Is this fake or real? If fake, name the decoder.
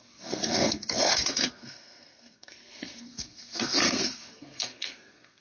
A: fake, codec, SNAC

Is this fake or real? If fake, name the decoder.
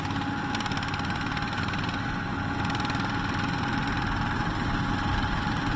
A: real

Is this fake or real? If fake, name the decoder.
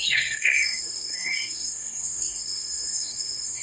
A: fake, codec, SNAC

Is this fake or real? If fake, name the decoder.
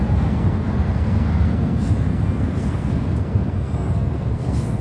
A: fake, codec, SNAC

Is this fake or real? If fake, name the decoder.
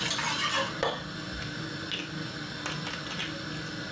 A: real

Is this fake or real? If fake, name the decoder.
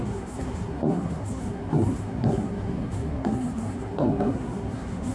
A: fake, codec, SNAC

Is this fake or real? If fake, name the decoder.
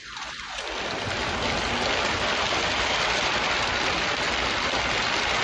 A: real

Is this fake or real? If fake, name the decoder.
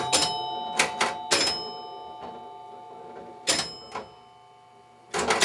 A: real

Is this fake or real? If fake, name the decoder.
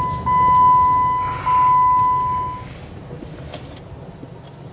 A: real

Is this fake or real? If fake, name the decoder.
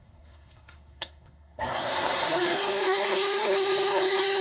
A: fake, codec, SNAC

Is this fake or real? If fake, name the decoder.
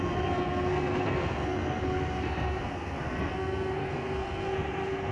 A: fake, codec, SNAC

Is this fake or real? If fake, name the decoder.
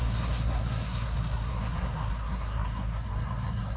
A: fake, codec, SNAC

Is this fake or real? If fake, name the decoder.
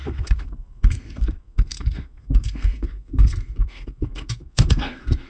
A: fake, codec, SNAC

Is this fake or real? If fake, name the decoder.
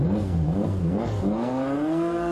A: fake, codec, SNAC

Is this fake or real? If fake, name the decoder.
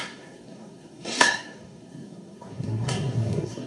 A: fake, codec, SNAC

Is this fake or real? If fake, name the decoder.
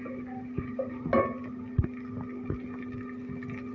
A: real